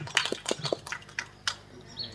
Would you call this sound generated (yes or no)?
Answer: no